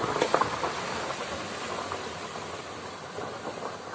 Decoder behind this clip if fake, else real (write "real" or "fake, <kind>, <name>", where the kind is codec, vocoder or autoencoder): real